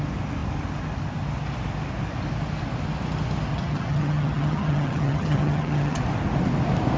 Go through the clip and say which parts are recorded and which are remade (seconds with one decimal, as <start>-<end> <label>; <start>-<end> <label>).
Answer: 0.0-3.5 recorded; 3.5-6.0 remade; 6.0-7.0 recorded